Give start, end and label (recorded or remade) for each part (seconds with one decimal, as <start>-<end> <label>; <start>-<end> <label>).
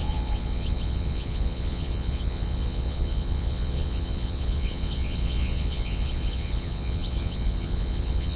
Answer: 0.0-8.4 remade